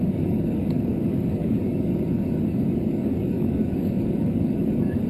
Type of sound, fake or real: fake